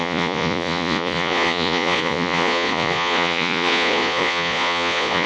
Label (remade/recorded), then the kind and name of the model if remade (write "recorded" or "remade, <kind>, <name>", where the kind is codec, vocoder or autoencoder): remade, vocoder, Vocos